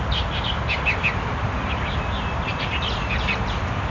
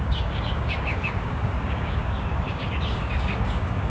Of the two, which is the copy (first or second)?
second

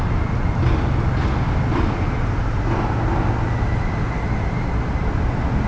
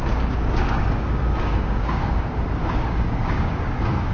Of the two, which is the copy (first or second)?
second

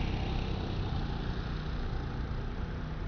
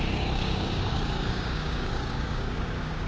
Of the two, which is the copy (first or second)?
second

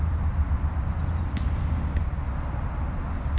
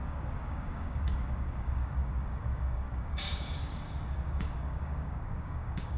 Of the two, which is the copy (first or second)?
second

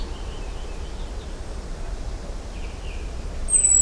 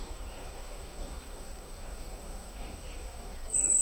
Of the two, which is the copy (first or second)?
second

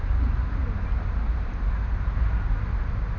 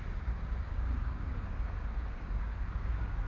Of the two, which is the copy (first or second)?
second